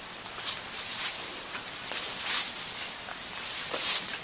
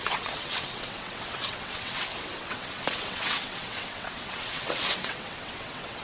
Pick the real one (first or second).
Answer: first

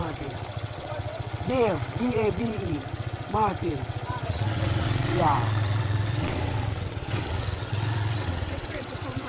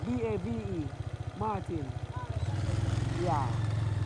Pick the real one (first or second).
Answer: second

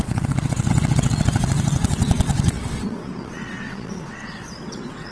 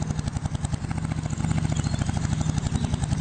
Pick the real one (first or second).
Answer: second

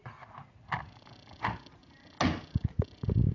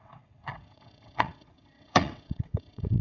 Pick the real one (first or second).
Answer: first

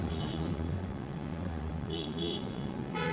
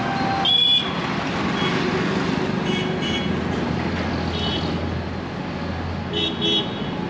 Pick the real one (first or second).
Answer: second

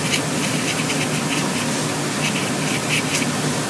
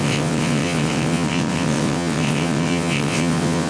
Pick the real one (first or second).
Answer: first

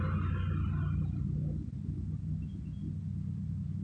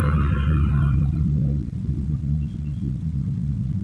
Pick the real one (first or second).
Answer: first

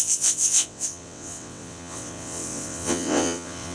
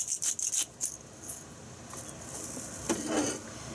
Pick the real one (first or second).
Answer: second